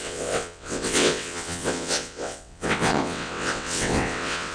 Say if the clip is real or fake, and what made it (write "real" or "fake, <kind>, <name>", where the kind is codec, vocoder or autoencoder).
fake, vocoder, WaveNeXt